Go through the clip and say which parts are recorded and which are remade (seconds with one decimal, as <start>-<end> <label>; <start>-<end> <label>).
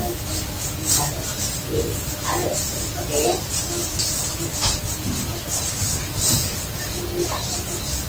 0.0-8.1 recorded